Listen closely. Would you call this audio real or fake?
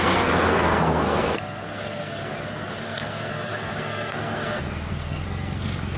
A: fake